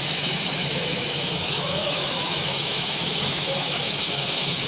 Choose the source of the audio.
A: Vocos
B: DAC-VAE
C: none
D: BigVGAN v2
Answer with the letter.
B